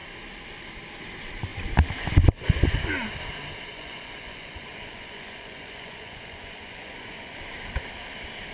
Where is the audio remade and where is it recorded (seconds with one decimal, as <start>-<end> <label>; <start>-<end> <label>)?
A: 0.0-3.7 recorded; 3.7-7.4 remade; 7.4-8.5 recorded